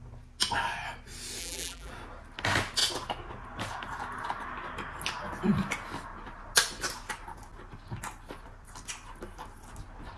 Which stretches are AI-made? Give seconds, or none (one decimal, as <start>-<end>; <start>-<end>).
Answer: 1.4-1.9